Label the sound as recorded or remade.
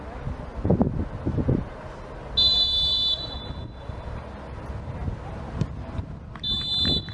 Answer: recorded